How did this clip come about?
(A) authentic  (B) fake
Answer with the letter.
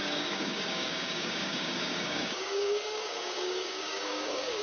B